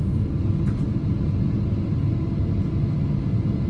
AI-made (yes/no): no